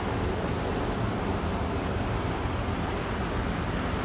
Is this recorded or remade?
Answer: recorded